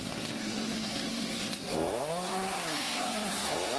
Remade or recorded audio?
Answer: remade